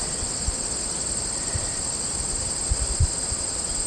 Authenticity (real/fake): real